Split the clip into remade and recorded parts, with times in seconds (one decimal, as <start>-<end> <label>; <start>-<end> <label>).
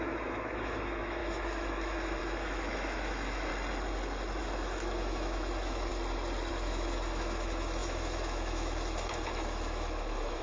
0.0-3.5 remade; 3.5-4.4 recorded; 4.4-5.9 remade; 5.9-6.5 recorded; 6.5-10.4 remade